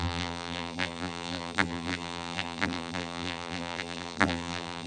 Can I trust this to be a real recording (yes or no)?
no